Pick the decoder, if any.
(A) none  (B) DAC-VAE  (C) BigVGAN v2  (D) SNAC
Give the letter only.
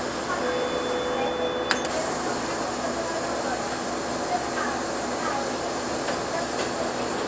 A